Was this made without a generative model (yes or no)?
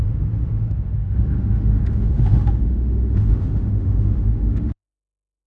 no